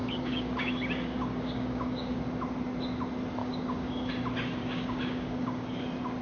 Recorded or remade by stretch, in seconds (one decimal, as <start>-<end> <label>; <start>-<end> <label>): 0.0-2.2 remade; 2.2-3.4 recorded; 3.4-4.1 remade; 4.1-4.6 recorded; 4.6-5.8 remade; 5.8-6.2 recorded